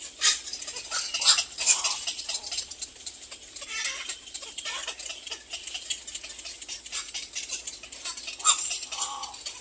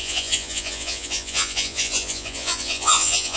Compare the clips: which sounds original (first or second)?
first